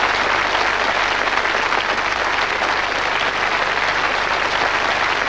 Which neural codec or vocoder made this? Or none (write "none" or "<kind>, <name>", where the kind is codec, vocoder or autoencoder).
none